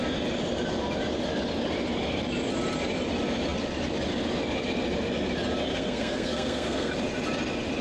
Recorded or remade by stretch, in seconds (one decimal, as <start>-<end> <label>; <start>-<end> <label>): 0.0-5.7 recorded; 5.7-6.9 remade; 6.9-7.8 recorded